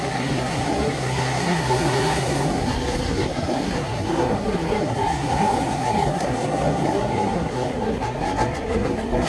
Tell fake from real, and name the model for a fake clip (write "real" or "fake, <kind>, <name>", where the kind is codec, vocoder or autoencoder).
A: fake, codec, SNAC